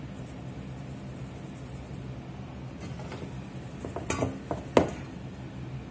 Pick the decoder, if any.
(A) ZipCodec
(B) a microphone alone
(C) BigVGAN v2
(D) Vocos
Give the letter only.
B